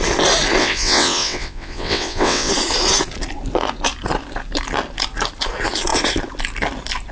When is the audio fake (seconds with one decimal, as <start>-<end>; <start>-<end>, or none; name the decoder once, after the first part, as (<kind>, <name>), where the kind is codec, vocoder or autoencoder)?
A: 0.6-2.5 (vocoder, WaveNeXt)